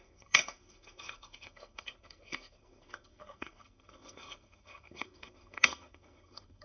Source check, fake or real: fake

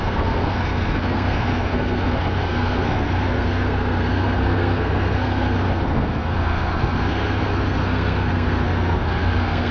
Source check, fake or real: fake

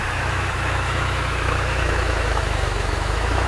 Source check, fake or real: fake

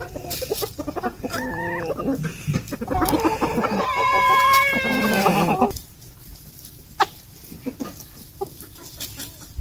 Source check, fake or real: real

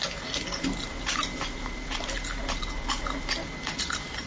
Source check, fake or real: real